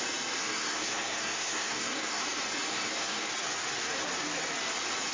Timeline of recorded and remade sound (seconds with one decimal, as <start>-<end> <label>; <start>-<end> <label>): 0.0-0.4 recorded; 0.4-2.2 remade; 2.2-2.7 recorded; 2.7-3.3 remade; 3.3-5.1 recorded